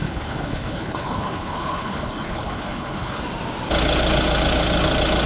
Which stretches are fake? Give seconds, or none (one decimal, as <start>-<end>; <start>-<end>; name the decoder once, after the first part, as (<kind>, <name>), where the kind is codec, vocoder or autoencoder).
0.0-3.2 (codec, HILCodec)